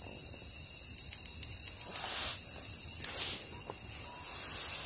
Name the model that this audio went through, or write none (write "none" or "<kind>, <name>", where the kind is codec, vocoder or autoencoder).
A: none